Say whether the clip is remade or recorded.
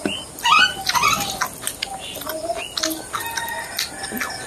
recorded